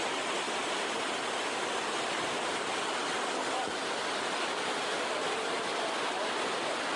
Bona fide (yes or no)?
yes